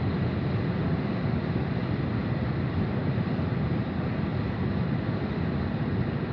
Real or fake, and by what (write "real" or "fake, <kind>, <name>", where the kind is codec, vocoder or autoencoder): fake, vocoder, BigVGAN v2